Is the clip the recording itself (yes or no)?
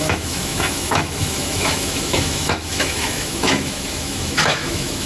no